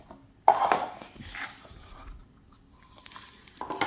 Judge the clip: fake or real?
real